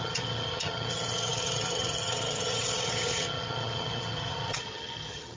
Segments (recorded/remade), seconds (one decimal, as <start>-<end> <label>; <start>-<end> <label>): 0.0-5.4 remade